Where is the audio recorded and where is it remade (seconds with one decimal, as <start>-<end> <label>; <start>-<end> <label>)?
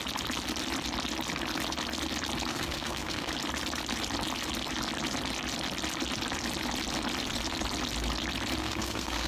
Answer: 0.0-2.5 recorded; 2.5-3.3 remade; 3.3-8.6 recorded; 8.6-9.3 remade